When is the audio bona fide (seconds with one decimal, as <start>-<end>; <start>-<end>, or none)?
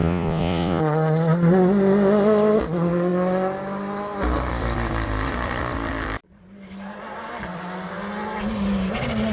0.8-9.3